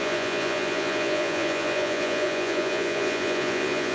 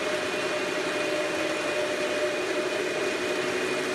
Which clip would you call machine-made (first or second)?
first